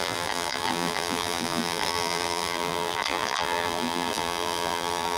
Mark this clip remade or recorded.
remade